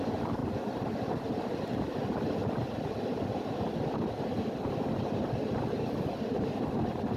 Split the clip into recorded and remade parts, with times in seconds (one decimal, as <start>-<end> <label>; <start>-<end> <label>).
0.0-7.2 recorded